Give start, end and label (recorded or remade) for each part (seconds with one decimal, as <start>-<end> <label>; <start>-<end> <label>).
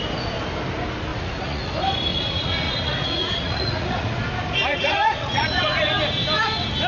0.0-1.1 recorded; 1.1-1.7 remade; 1.7-2.1 recorded; 2.1-4.1 remade; 4.1-4.7 recorded; 4.7-5.9 remade; 5.9-6.9 recorded